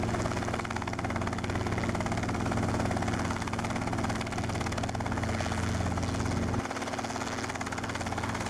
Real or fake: real